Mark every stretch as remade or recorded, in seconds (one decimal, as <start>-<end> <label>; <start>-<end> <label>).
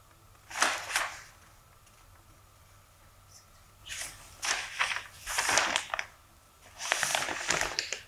0.0-3.8 recorded; 3.8-4.5 remade; 4.5-7.1 recorded; 7.1-8.1 remade